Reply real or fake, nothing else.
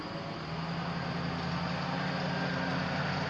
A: real